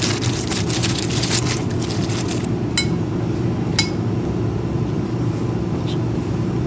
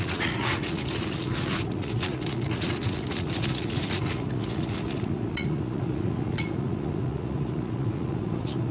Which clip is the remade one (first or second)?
second